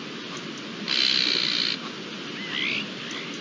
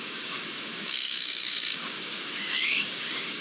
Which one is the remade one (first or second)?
second